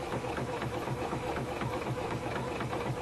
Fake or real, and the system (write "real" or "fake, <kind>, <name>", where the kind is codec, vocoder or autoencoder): fake, autoencoder, DAC-VAE